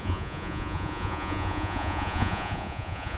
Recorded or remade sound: remade